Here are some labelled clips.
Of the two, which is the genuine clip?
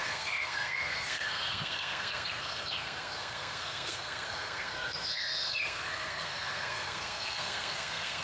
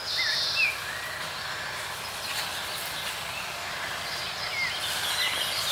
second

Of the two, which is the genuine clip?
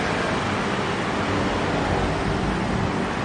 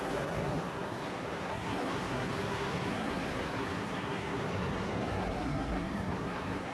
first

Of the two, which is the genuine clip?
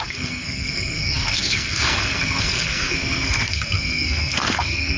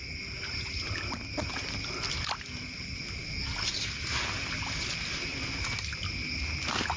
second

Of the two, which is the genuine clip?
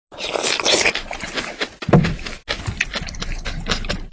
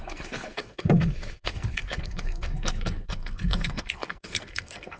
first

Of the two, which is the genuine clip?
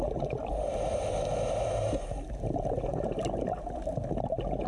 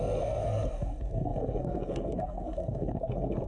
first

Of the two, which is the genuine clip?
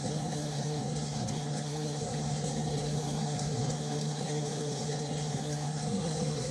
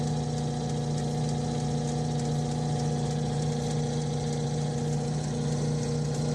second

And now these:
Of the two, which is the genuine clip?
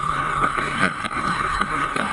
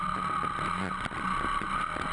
second